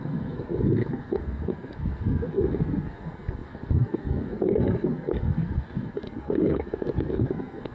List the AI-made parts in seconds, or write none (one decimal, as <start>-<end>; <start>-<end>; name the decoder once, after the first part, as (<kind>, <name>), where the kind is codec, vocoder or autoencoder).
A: 0.0-7.7 (codec, SNAC)

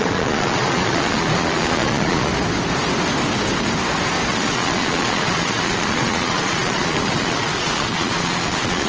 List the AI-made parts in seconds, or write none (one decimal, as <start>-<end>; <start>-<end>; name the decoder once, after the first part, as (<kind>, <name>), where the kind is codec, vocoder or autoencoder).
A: 0.0-2.3 (vocoder, Vocos); 4.3-8.9